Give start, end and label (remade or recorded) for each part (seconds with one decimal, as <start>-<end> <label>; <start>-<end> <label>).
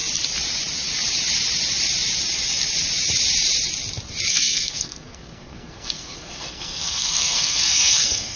0.0-4.3 recorded; 4.3-8.4 remade